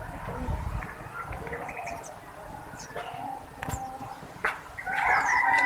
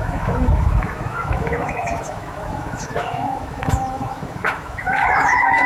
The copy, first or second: second